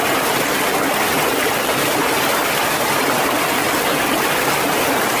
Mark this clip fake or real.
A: real